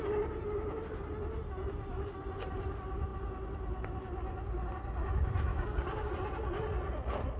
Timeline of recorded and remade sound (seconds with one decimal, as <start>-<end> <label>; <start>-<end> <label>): 0.0-5.5 recorded; 5.5-6.1 remade; 6.1-7.4 recorded